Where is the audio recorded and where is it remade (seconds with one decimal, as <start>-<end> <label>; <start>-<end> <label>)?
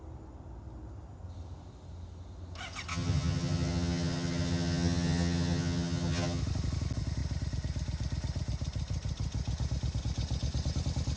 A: 0.0-2.9 recorded; 2.9-6.4 remade; 6.4-11.2 recorded